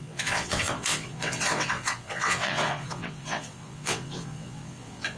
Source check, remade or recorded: remade